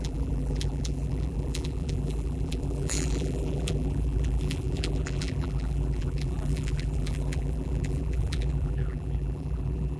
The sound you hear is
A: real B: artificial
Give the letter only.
B